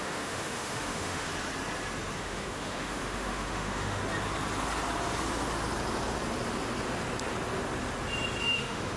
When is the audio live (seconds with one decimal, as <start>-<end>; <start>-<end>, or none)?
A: 1.3-2.2; 4.0-8.4